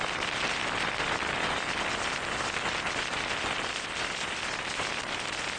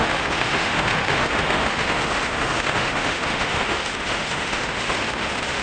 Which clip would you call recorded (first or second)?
first